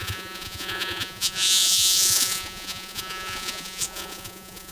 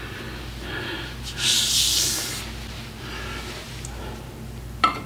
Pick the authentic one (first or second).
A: second